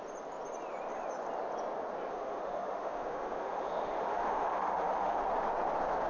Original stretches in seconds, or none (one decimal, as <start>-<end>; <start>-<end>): 0.0-2.1; 5.2-6.1